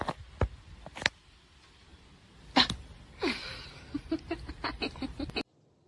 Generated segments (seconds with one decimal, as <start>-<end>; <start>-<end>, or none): none